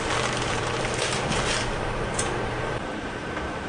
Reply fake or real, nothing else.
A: fake